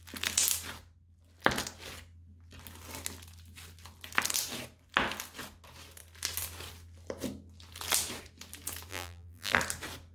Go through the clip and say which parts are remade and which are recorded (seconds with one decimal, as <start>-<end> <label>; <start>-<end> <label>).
0.0-8.9 recorded; 8.9-9.6 remade; 9.6-10.1 recorded